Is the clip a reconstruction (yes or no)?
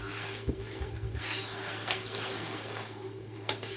yes